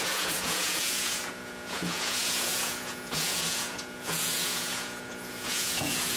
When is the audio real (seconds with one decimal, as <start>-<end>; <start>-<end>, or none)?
none